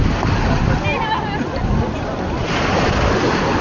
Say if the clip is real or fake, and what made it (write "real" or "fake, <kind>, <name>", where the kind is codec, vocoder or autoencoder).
real